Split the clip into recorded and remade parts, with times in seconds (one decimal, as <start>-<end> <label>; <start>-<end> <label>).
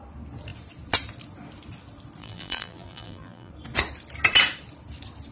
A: 0.0-2.2 recorded; 2.2-3.5 remade; 3.5-5.3 recorded